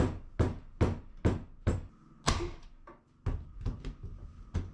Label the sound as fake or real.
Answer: real